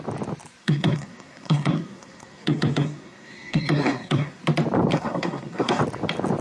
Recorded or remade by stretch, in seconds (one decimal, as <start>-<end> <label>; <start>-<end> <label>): 0.0-0.6 recorded; 0.6-4.4 remade; 4.4-4.9 recorded; 4.9-5.8 remade; 5.8-6.4 recorded